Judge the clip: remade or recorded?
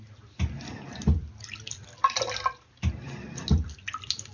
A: recorded